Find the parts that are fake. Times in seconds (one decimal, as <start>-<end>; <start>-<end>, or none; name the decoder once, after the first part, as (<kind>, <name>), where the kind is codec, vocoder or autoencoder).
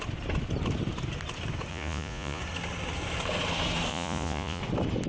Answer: 1.7-2.4 (vocoder, Vocos); 3.9-4.6